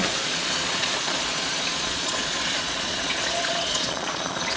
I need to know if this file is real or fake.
fake